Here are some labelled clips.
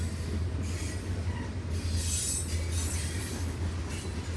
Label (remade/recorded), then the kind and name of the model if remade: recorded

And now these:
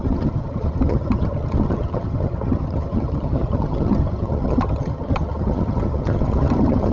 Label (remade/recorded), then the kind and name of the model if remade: remade, vocoder, HiFi-GAN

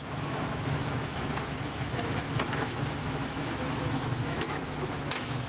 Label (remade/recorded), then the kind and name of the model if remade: remade, autoencoder, DAC-VAE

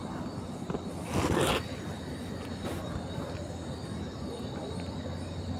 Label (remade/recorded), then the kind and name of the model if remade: recorded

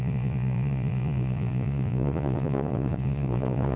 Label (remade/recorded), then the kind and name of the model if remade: remade, vocoder, Vocos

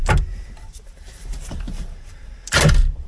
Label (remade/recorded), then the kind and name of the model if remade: remade, vocoder, BigVGAN v2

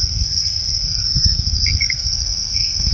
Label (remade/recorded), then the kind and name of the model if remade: remade, codec, SNAC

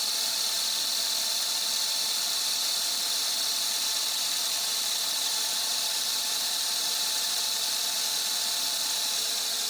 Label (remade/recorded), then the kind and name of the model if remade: remade, vocoder, BigVGAN v2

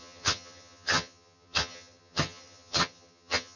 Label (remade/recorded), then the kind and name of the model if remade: remade, vocoder, HiFi-GAN